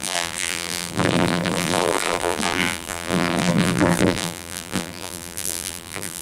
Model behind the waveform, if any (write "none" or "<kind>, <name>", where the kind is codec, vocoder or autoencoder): vocoder, BigVGAN v2